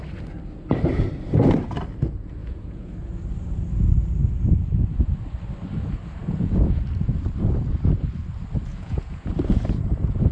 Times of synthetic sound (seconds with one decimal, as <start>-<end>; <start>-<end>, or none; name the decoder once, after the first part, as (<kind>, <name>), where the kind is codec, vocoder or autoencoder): 2.4-2.9 (vocoder, Vocos); 6.2-6.8; 8.7-9.3